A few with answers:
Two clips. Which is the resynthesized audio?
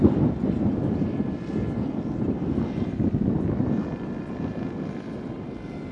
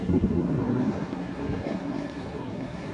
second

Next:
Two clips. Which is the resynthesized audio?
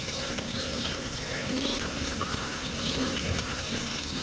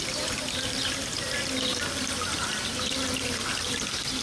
first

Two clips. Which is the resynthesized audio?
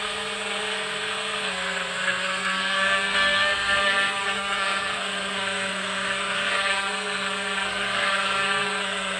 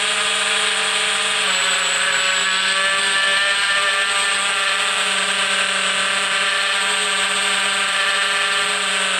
first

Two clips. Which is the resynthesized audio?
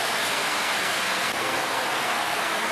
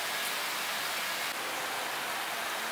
first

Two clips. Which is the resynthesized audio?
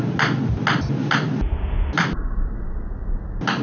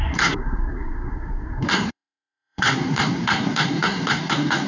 second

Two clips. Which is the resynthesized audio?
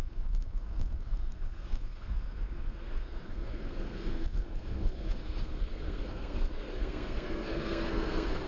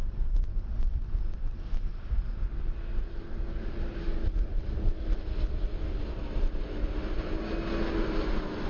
first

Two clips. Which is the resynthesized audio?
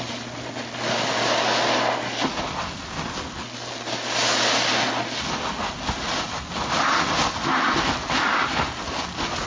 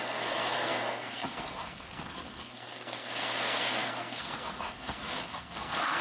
second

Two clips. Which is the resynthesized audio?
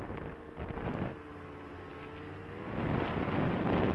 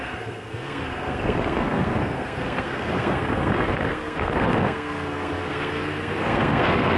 second